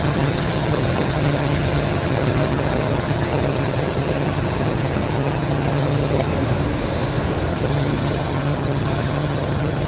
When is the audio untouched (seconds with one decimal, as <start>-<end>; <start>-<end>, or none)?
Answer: 6.3-7.5